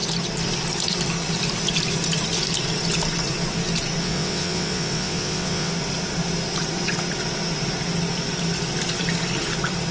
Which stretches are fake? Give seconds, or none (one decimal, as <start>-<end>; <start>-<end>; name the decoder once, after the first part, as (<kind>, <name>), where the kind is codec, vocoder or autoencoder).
4.0-5.7 (vocoder, WaveNeXt)